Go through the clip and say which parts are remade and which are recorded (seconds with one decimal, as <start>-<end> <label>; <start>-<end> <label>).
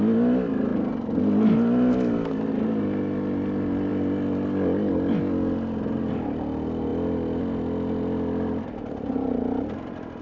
0.0-10.2 recorded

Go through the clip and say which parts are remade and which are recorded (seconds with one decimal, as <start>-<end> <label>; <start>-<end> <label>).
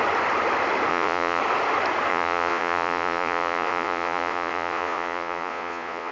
0.0-0.9 recorded; 0.9-1.4 remade; 1.4-2.1 recorded; 2.1-6.1 remade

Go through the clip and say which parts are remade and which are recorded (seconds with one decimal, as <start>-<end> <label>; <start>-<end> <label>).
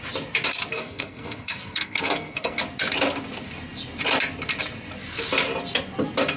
0.0-0.7 recorded; 0.7-2.6 remade; 2.6-6.4 recorded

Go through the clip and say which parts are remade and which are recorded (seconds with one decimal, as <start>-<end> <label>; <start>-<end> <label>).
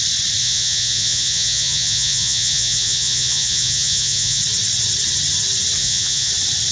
0.0-0.4 recorded; 0.4-4.4 remade; 4.4-5.8 recorded; 5.8-6.3 remade; 6.3-6.7 recorded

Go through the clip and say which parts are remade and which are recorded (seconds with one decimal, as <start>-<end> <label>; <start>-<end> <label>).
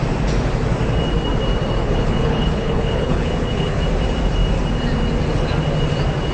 0.0-1.8 recorded; 1.8-3.8 remade; 3.8-6.3 recorded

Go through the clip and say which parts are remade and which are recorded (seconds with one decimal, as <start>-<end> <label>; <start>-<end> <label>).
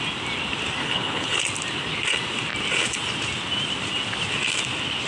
0.0-0.8 recorded; 0.8-1.4 remade; 1.4-5.1 recorded